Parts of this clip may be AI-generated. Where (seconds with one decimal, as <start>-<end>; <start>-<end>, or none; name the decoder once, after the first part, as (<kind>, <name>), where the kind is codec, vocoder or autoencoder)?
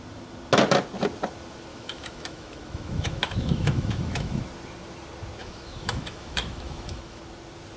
1.7-4.4 (autoencoder, DAC-VAE); 5.4-7.2